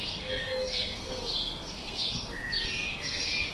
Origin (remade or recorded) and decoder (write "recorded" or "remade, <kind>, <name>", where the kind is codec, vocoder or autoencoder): remade, codec, SNAC